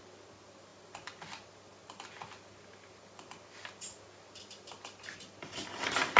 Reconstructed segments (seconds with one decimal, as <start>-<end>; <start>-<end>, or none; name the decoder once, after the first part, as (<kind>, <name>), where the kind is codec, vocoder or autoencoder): none